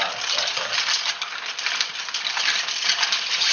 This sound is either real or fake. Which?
real